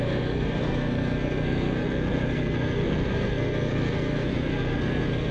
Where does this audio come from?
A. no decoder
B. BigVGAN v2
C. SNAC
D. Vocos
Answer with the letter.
C